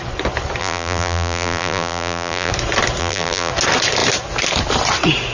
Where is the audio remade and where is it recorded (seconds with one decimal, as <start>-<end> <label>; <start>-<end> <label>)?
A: 0.0-0.6 recorded; 0.6-2.5 remade; 2.5-3.0 recorded; 3.0-3.5 remade; 3.5-5.3 recorded